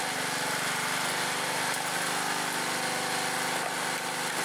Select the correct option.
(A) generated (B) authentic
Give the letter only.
B